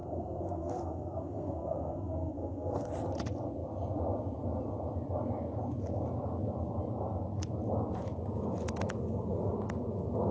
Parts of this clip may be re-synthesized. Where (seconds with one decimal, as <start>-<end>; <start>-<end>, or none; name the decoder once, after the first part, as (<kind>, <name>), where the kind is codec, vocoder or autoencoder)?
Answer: 0.0-2.9 (codec, SNAC)